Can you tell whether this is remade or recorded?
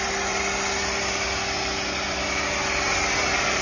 recorded